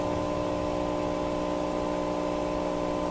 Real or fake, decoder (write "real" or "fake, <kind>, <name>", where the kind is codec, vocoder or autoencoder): real